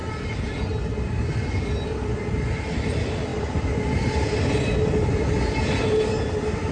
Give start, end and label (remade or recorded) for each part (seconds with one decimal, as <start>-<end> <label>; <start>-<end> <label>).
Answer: 0.0-6.7 recorded